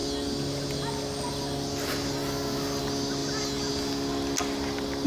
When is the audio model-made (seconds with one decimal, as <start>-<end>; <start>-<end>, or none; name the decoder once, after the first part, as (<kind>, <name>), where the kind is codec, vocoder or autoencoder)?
none